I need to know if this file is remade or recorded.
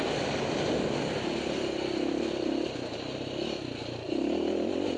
recorded